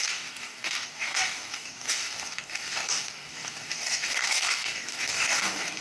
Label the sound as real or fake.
fake